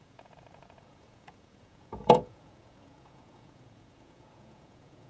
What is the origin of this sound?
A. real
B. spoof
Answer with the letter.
B